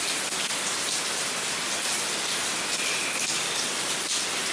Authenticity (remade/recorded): recorded